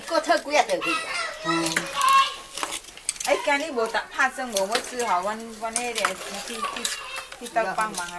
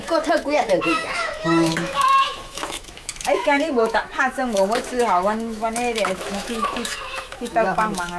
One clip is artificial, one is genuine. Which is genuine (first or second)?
first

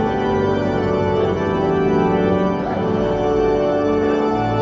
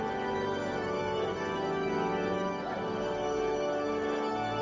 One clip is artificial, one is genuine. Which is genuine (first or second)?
first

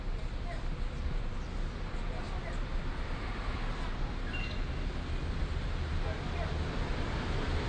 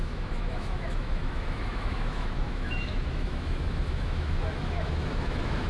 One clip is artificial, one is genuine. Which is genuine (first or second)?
first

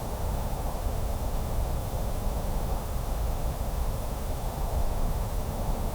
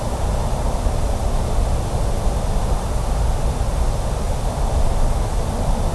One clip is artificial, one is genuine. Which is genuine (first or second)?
second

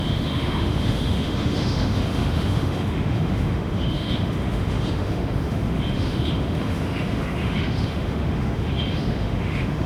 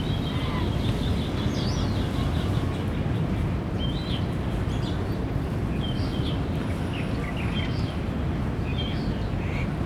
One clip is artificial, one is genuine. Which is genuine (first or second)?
second